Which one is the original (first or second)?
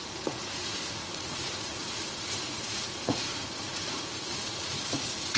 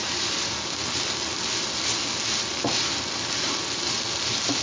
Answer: second